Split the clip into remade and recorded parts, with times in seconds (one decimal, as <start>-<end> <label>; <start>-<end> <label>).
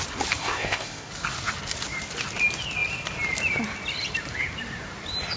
0.0-0.4 recorded; 0.4-1.1 remade; 1.1-5.4 recorded